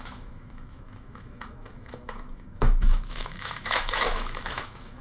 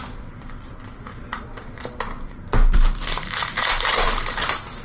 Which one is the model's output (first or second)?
first